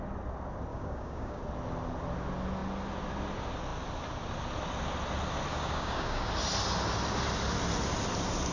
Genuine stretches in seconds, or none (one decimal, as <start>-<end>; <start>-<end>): 0.0-0.7; 1.4-5.5; 6.3-8.5